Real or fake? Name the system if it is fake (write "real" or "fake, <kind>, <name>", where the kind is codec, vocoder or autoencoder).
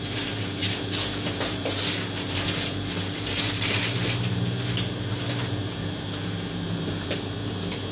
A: fake, vocoder, BigVGAN v2